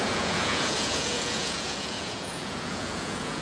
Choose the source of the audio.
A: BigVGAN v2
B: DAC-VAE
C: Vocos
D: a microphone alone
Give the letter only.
C